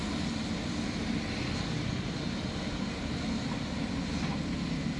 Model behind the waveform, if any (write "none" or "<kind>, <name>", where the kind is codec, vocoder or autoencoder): none